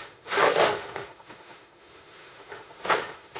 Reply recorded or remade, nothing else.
remade